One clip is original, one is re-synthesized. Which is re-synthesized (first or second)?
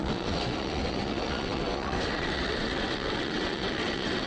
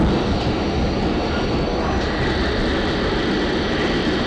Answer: first